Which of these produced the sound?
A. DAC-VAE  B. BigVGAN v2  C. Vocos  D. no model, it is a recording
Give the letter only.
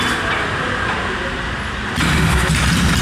D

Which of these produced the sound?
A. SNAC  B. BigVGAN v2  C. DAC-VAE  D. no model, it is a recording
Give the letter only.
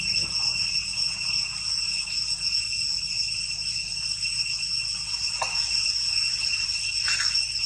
D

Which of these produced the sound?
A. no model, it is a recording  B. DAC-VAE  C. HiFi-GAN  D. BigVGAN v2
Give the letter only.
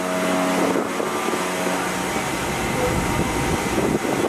A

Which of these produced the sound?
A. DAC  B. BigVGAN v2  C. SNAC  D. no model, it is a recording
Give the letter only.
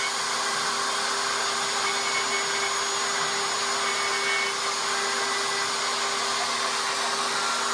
D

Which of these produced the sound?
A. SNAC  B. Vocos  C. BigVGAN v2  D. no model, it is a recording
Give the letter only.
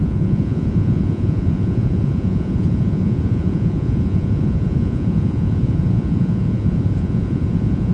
B